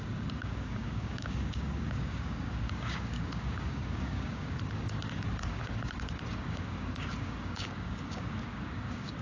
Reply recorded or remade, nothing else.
remade